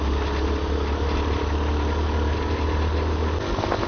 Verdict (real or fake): real